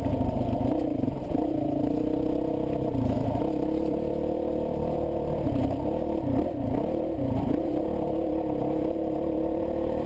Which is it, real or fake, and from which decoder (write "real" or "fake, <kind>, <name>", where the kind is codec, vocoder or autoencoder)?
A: fake, vocoder, BigVGAN v2